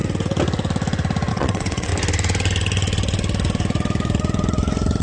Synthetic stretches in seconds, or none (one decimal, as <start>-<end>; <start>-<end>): 1.3-1.9